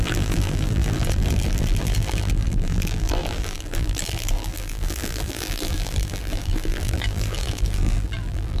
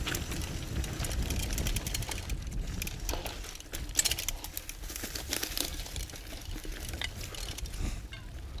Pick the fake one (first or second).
first